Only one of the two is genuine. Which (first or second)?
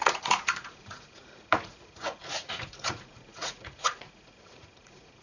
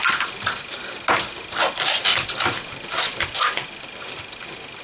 second